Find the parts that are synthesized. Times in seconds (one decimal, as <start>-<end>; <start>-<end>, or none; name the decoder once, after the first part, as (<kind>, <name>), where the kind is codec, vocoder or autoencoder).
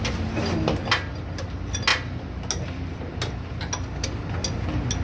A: none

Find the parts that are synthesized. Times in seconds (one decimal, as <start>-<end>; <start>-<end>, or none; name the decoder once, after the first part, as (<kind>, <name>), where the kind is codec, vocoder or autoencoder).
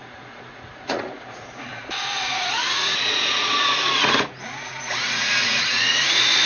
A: 0.0-6.5 (vocoder, Vocos)